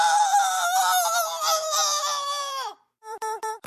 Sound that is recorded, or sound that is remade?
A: remade